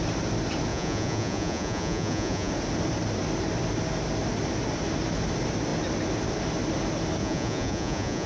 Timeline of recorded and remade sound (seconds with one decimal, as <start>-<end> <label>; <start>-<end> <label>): 0.0-0.7 recorded; 0.7-2.5 remade; 2.5-7.2 recorded; 7.2-8.3 remade